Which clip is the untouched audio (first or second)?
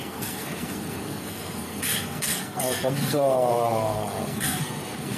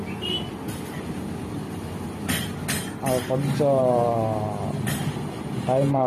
second